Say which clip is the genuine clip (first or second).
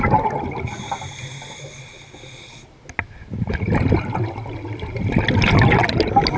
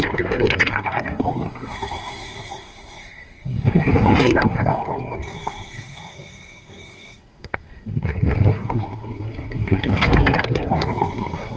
first